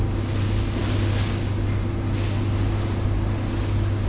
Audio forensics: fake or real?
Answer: real